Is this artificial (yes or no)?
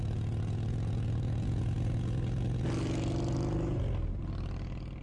no